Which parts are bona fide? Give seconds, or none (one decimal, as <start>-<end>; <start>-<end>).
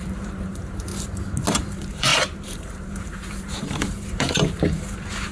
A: 0.9-1.5